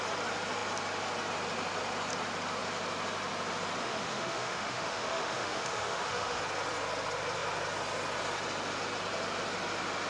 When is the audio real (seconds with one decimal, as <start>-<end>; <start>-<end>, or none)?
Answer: 0.0-3.8; 6.4-10.1